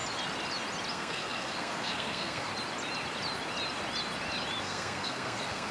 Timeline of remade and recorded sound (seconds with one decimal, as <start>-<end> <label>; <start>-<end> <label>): 0.0-0.9 recorded; 0.9-2.5 remade; 2.5-4.6 recorded; 4.6-5.7 remade